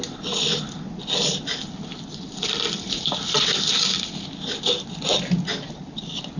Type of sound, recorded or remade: recorded